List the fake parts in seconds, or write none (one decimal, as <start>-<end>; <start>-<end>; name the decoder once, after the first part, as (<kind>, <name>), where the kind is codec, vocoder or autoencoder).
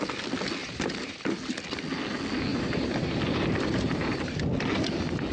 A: 0.6-1.4 (vocoder, BigVGAN v2); 2.5-4.4